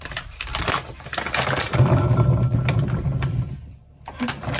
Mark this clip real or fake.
fake